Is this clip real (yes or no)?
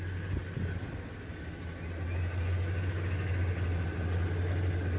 yes